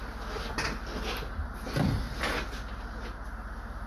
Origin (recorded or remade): recorded